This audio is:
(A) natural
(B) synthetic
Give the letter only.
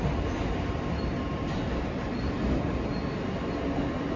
A